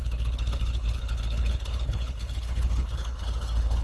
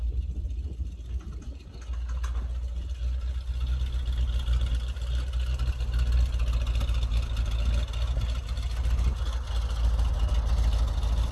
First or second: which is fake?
first